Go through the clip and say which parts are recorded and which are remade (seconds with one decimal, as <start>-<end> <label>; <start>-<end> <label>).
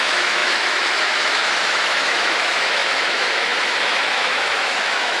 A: 0.0-5.2 remade